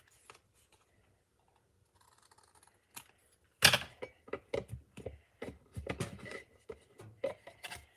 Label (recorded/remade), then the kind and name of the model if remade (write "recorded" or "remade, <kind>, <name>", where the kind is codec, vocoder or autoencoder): recorded